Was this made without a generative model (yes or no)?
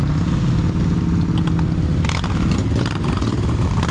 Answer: yes